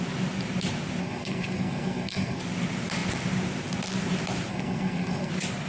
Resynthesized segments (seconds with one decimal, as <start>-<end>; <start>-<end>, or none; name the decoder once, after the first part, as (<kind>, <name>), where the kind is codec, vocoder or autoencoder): 1.0-2.4 (codec, SNAC); 4.5-5.3